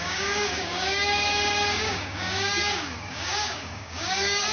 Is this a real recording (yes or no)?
no